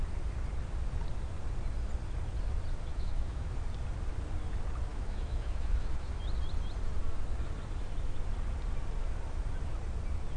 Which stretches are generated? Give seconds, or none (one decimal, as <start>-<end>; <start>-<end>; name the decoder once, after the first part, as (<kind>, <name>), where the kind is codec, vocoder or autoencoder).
2.9-3.5 (autoencoder, DAC-VAE); 4.9-6.2

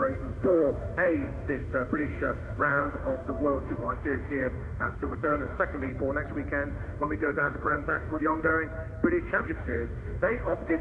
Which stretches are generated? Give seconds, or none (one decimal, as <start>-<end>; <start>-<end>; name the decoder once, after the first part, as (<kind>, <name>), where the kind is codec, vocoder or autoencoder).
0.0-5.9 (autoencoder, DAC-VAE); 6.7-8.5; 9.2-10.8

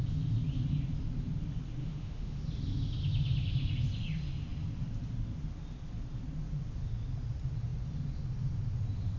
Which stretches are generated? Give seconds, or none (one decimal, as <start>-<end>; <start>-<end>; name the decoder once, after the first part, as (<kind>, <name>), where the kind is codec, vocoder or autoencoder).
1.8-2.4 (autoencoder, DAC-VAE)

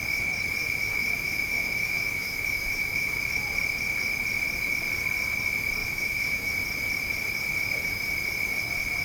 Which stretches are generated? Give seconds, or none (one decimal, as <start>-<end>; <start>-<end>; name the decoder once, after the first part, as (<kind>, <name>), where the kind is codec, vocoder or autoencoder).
0.6-3.4 (autoencoder, DAC-VAE); 5.8-6.5